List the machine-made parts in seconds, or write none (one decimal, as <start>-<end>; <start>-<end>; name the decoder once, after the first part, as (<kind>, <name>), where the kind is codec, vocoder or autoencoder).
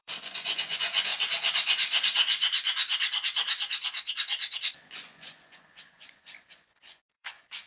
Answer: 0.0-1.1 (vocoder, Vocos); 4.8-7.7